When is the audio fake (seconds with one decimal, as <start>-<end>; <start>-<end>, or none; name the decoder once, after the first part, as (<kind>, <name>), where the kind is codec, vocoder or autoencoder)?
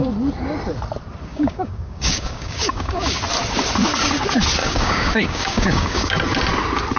1.3-3.2 (codec, DAC); 4.6-6.1